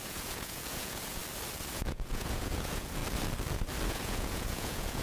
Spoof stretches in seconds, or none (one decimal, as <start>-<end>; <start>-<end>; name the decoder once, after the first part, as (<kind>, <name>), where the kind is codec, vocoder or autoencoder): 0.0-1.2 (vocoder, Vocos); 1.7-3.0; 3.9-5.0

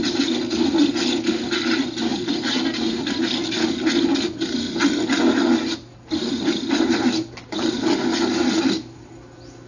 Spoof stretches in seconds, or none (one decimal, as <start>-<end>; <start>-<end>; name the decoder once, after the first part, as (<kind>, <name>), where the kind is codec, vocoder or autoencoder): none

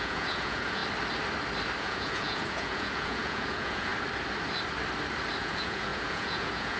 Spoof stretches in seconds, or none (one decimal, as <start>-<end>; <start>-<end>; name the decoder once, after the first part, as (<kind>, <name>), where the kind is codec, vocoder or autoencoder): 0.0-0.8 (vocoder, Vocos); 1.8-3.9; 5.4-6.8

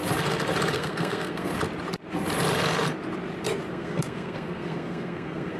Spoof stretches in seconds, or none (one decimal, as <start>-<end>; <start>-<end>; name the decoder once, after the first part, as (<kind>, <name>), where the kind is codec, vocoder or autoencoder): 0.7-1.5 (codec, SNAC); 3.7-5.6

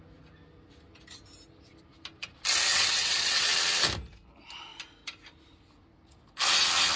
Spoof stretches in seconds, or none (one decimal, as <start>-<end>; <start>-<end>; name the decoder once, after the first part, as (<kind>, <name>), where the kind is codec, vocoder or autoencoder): 2.7-3.5 (vocoder, WaveNeXt)